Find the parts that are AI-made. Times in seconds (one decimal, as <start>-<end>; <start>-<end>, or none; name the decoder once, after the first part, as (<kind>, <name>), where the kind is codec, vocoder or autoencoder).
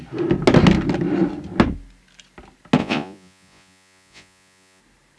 2.8-4.8 (vocoder, Vocos)